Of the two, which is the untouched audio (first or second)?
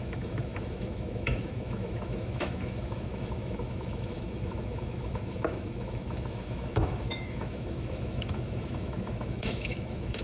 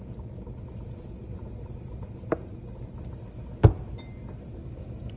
second